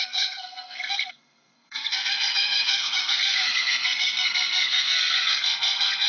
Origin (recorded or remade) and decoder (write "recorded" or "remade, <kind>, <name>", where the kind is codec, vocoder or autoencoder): remade, codec, SNAC